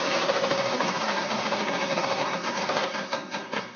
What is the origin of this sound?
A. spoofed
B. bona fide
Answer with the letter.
A